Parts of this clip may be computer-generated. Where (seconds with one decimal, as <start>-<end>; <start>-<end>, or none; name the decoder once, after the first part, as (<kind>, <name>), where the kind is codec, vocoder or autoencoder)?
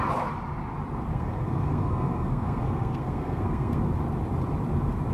1.1-3.8 (codec, SNAC)